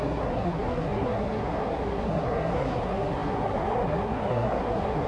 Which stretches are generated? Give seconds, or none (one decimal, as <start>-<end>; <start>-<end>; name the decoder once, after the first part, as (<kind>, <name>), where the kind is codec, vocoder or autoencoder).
0.0-5.1 (codec, SNAC)